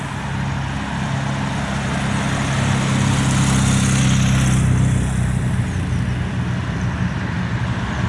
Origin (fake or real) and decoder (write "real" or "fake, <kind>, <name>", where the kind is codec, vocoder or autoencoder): real